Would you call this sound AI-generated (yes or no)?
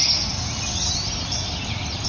no